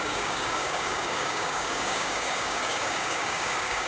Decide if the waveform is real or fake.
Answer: fake